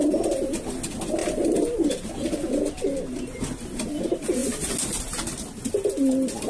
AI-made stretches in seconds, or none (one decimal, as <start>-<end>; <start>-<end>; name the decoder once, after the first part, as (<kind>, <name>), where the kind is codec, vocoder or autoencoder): 1.2-1.9 (vocoder, BigVGAN v2)